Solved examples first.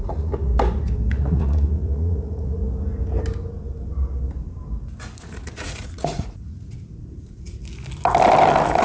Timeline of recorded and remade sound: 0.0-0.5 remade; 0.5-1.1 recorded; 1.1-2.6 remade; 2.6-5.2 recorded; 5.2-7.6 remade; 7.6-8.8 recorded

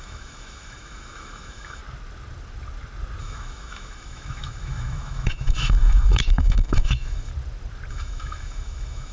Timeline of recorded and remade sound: 0.0-1.8 remade; 1.8-3.2 recorded; 3.2-7.3 remade; 7.3-7.9 recorded; 7.9-9.1 remade

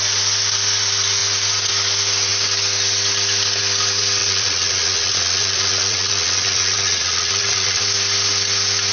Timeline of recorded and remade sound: 0.0-4.2 recorded; 4.2-7.8 remade; 7.8-8.9 recorded

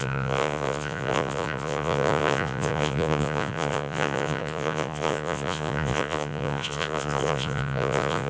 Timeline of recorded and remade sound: 0.0-8.3 remade

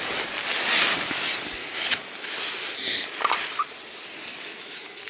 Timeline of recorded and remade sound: 0.0-1.6 recorded; 1.6-2.3 remade; 2.3-4.3 recorded; 4.3-5.1 remade

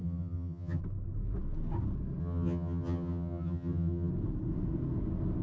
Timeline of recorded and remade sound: 0.0-0.8 remade; 0.8-2.2 recorded; 2.2-4.1 remade; 4.1-5.4 recorded

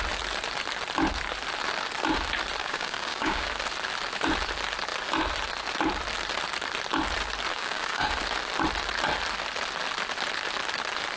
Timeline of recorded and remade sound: 0.0-2.6 recorded; 2.6-3.5 remade; 3.5-7.5 recorded; 7.5-8.1 remade; 8.1-11.2 recorded

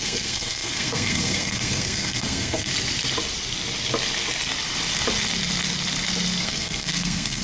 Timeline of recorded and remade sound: 0.0-2.7 remade; 2.7-6.4 recorded; 6.4-7.4 remade